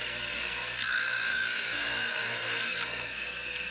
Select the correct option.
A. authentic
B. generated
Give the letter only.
B